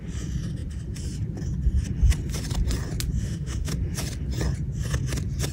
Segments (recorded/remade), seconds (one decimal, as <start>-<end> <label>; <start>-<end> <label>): 0.0-3.2 recorded; 3.2-3.7 remade; 3.7-5.5 recorded